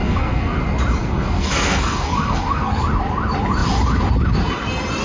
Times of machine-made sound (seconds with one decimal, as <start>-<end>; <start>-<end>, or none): 0.0-0.6; 1.0-2.8